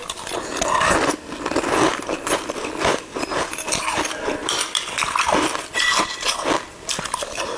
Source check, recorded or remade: recorded